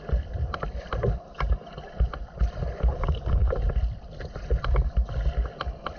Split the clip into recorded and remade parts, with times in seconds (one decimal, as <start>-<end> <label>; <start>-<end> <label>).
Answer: 0.0-6.0 recorded

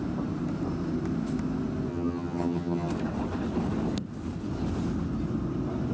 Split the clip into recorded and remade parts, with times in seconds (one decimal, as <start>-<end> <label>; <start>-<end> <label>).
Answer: 0.0-1.9 recorded; 1.9-2.9 remade; 2.9-5.9 recorded

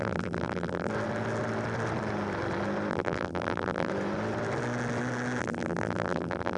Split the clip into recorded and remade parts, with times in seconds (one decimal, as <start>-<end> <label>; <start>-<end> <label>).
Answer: 0.0-0.9 remade; 0.9-2.9 recorded; 2.9-3.9 remade; 3.9-5.4 recorded; 5.4-6.6 remade

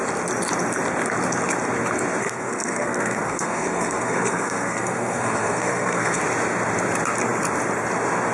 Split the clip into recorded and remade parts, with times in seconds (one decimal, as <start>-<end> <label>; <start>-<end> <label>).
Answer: 0.0-2.2 recorded; 2.2-6.2 remade; 6.2-8.3 recorded

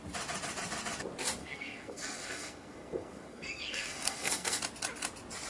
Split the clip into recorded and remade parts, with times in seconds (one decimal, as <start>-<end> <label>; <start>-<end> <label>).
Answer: 0.0-1.4 recorded; 1.4-4.6 remade; 4.6-5.5 recorded

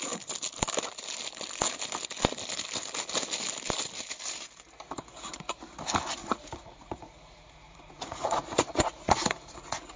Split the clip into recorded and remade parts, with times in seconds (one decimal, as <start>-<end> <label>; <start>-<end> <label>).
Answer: 0.0-6.2 recorded; 6.2-10.0 remade